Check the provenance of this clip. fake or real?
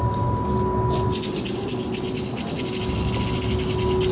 real